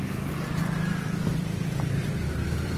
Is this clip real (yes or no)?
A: no